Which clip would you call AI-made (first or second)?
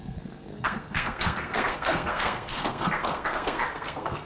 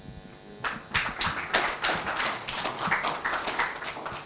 first